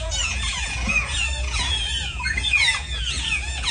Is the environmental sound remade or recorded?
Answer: remade